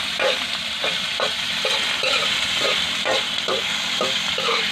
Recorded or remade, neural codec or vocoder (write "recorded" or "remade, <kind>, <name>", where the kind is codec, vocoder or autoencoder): recorded